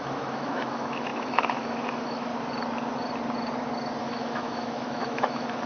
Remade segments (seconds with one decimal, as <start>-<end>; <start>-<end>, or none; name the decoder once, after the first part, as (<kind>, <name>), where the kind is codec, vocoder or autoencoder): 0.0-2.3 (autoencoder, DAC-VAE); 4.0-5.7